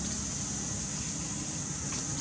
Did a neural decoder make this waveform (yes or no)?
no